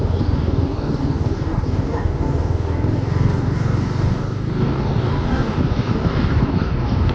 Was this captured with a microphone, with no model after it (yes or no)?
no